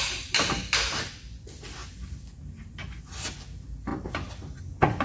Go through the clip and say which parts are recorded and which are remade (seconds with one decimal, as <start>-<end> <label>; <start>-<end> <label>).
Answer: 0.0-5.0 recorded

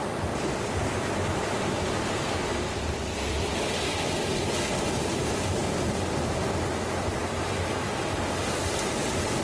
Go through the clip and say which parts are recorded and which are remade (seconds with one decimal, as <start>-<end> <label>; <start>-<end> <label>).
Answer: 0.0-2.5 recorded; 2.5-4.1 remade; 4.1-5.6 recorded; 5.6-6.3 remade; 6.3-7.2 recorded; 7.2-8.2 remade; 8.2-9.4 recorded

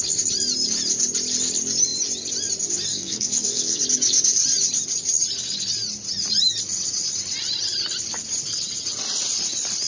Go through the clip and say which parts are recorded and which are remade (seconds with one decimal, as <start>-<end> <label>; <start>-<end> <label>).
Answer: 0.0-2.9 recorded; 2.9-3.8 remade; 3.8-9.9 recorded

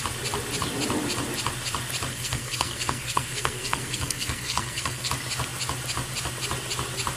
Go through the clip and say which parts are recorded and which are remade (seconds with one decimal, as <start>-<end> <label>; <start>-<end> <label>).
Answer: 0.0-2.1 recorded; 2.1-5.1 remade; 5.1-7.2 recorded

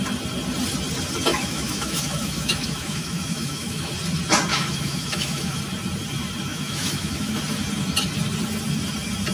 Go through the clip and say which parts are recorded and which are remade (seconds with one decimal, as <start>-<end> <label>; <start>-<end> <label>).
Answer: 0.0-1.3 recorded; 1.3-3.9 remade; 3.9-4.5 recorded; 4.5-5.6 remade; 5.6-6.5 recorded; 6.5-7.4 remade; 7.4-9.3 recorded

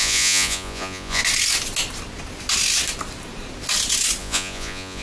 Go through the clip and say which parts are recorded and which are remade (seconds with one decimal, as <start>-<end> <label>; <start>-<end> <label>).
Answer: 0.0-1.2 remade; 1.2-4.2 recorded; 4.2-5.0 remade

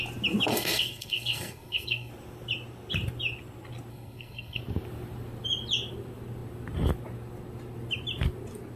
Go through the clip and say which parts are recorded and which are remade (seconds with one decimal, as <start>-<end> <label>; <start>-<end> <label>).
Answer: 0.0-0.5 recorded; 0.5-2.1 remade; 2.1-3.9 recorded; 3.9-4.6 remade; 4.6-8.8 recorded

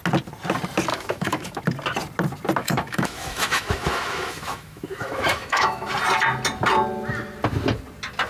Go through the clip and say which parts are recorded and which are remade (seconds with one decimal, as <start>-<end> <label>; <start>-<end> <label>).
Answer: 0.0-0.9 recorded; 0.9-1.6 remade; 1.6-2.6 recorded; 2.6-5.9 remade; 5.9-8.3 recorded